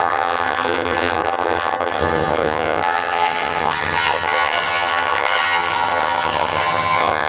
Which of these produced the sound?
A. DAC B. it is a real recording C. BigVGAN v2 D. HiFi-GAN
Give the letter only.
D